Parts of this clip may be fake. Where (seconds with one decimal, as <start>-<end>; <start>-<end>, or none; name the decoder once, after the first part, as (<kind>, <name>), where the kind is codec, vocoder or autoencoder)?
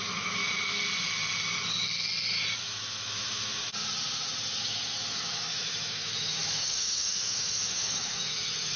0.0-0.4 (autoencoder, DAC-VAE); 2.6-3.6; 4.6-8.8